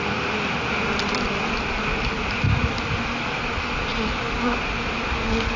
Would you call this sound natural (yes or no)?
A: yes